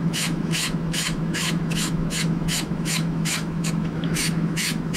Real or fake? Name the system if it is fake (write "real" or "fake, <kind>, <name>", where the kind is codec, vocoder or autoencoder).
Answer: fake, autoencoder, DAC-VAE